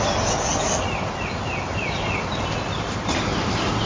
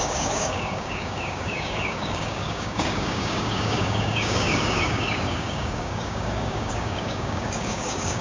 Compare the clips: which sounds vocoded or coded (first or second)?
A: second